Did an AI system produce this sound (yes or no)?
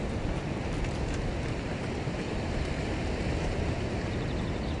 no